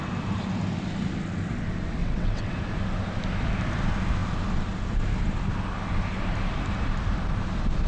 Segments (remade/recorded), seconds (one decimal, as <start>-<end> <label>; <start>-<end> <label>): 0.0-2.0 recorded; 2.0-2.5 remade; 2.5-7.9 recorded